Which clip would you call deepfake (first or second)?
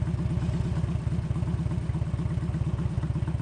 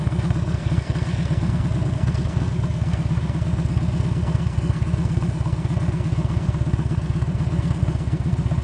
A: second